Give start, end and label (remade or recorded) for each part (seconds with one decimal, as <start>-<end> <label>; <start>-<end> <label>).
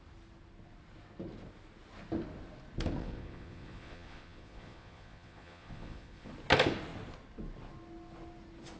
0.0-3.0 recorded; 3.0-6.3 remade; 6.3-8.8 recorded